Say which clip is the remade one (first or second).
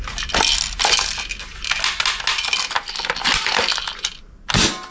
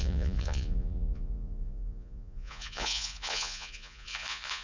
second